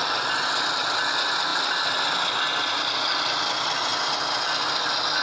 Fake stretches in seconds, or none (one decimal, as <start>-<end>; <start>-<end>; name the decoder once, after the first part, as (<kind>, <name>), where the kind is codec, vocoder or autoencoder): none